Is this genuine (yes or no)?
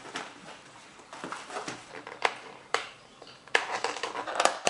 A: no